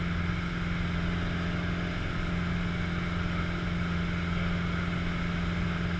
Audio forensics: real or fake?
real